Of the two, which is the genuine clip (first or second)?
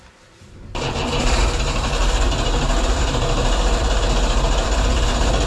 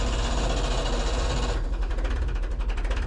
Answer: second